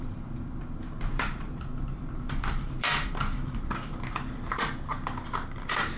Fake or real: fake